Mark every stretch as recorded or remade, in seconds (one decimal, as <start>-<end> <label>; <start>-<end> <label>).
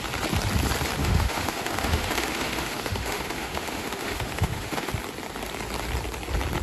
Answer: 0.0-1.0 recorded; 1.0-4.9 remade; 4.9-6.6 recorded